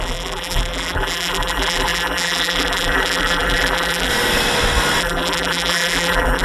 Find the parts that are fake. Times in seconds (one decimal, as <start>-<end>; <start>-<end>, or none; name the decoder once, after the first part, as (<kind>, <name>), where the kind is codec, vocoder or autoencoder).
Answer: 0.0-4.1 (vocoder, BigVGAN v2); 5.0-6.4